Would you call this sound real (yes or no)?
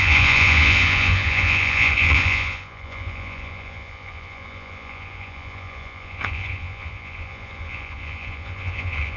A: no